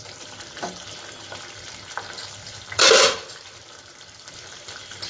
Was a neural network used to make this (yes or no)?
yes